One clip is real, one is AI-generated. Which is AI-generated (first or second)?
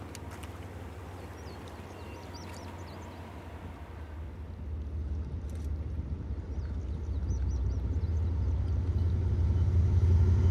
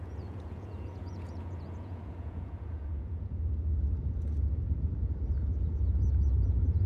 second